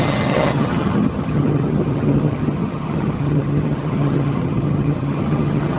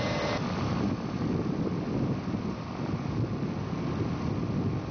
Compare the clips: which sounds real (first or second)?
second